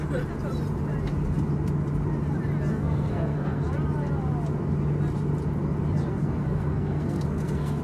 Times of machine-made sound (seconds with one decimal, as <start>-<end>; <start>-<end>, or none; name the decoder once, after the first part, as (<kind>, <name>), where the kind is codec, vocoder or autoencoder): 2.7-3.6 (codec, SNAC); 6.1-7.8

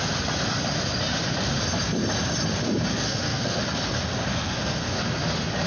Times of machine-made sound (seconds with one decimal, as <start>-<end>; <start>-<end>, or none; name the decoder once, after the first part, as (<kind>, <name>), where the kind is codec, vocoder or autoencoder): 2.9-3.6 (codec, SNAC); 4.3-5.0